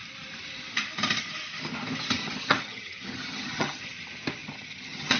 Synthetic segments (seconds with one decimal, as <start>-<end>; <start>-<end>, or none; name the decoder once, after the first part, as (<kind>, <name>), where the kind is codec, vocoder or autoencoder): 2.2-3.8 (vocoder, HiFi-GAN); 4.4-5.2